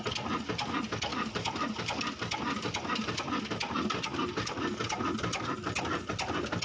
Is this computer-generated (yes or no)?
no